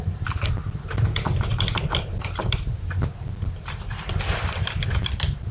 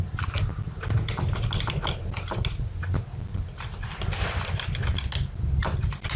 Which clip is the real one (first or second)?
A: second